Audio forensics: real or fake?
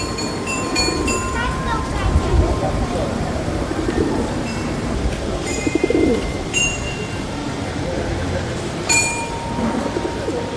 fake